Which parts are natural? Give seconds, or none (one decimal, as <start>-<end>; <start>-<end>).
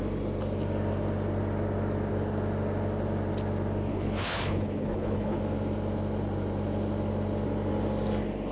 0.0-3.9; 5.4-8.5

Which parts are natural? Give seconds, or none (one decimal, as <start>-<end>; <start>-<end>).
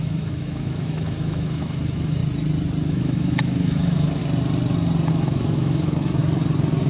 2.2-2.8; 4.2-5.1; 6.2-6.9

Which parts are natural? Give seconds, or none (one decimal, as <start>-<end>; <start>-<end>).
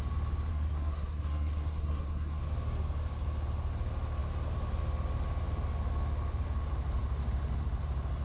0.0-0.5; 2.4-8.2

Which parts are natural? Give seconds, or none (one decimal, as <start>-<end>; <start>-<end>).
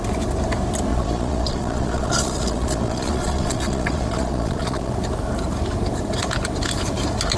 0.0-0.9; 4.9-7.4